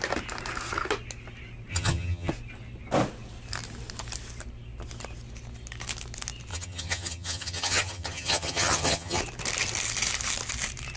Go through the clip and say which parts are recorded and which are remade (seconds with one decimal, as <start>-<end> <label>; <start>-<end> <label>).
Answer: 0.0-1.7 recorded; 1.7-2.3 remade; 2.3-6.5 recorded; 6.5-9.2 remade; 9.2-11.0 recorded